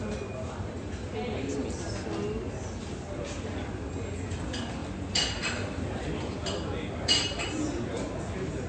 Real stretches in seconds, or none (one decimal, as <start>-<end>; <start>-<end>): 0.0-8.7